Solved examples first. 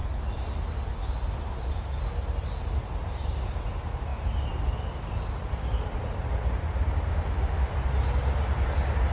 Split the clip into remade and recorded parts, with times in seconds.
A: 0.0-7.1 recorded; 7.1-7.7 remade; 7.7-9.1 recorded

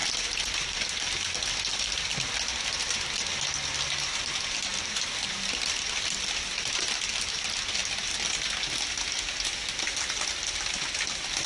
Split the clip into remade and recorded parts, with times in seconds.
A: 0.0-2.3 remade; 2.3-4.7 recorded; 4.7-6.9 remade; 6.9-11.5 recorded